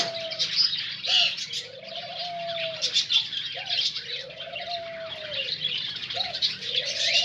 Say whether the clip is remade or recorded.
recorded